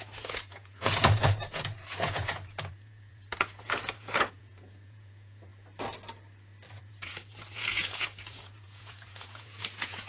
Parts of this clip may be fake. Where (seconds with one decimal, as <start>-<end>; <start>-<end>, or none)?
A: 0.0-5.5; 6.8-10.1